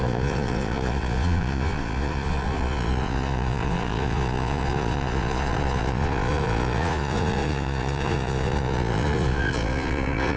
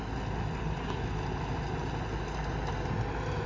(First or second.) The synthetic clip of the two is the first